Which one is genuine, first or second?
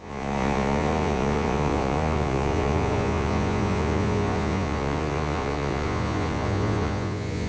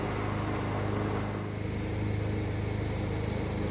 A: second